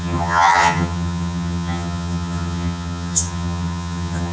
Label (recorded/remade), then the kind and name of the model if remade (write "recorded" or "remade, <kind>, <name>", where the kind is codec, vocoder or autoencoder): remade, vocoder, HiFi-GAN